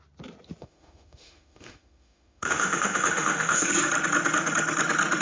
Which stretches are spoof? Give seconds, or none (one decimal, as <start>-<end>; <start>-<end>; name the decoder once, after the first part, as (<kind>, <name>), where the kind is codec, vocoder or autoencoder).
0.6-3.7 (autoencoder, DAC-VAE)